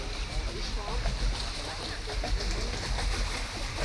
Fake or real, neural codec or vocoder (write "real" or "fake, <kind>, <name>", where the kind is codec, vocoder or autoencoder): real